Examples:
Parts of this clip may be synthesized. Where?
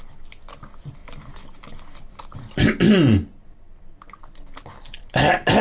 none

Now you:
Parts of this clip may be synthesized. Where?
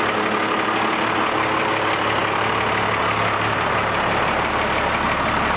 none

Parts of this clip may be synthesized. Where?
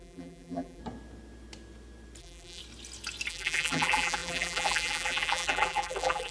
0.0-0.8 (vocoder, BigVGAN v2); 2.2-2.6; 3.3-6.3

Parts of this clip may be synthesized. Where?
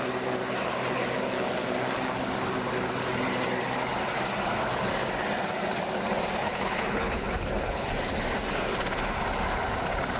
6.4-7.9 (codec, HILCodec)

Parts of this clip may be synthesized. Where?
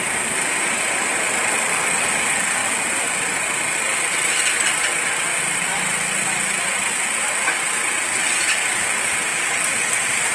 2.6-3.2 (vocoder, BigVGAN v2); 5.3-5.9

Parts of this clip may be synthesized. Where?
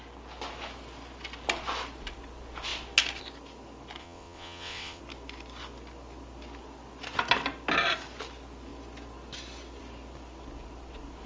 4.0-5.0 (vocoder, WaveNeXt)